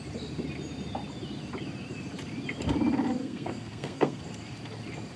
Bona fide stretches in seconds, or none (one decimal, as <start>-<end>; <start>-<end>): 0.0-3.2; 4.2-5.2